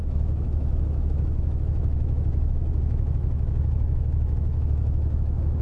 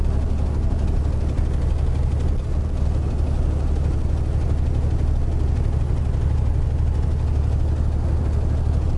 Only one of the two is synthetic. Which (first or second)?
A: first